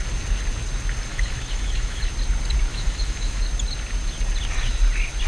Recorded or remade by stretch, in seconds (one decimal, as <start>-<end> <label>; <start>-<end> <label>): 0.0-1.1 recorded; 1.1-2.0 remade; 2.0-2.7 recorded; 2.7-3.4 remade; 3.4-5.3 recorded